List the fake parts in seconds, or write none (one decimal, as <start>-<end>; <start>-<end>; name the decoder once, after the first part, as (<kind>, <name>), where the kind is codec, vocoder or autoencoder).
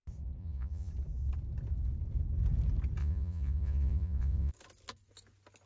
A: 0.4-0.9 (vocoder, Vocos); 3.0-4.5